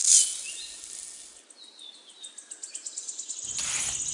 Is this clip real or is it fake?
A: real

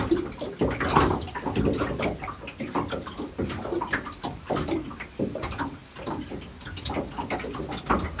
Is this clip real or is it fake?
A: real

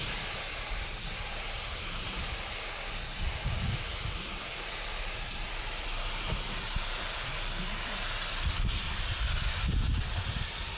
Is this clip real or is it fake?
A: fake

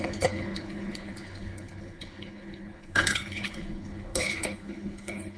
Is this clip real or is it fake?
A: fake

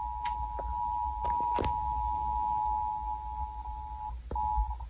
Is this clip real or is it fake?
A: real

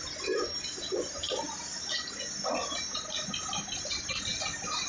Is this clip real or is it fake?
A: real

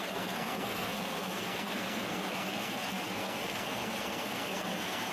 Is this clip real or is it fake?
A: fake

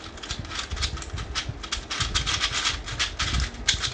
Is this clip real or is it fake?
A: real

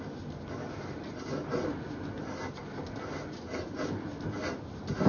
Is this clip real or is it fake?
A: real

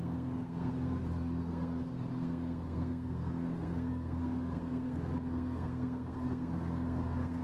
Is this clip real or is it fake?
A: fake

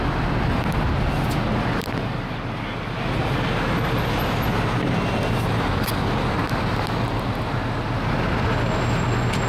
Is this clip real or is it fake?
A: real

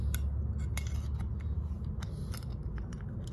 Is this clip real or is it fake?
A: real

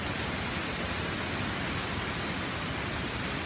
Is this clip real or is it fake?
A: real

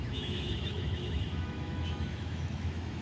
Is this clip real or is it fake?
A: fake